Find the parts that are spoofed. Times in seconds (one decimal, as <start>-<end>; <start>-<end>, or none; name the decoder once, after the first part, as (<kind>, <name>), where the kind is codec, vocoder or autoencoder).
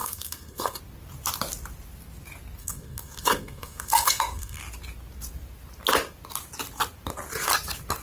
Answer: 0.0-0.8 (codec, SNAC); 2.6-4.6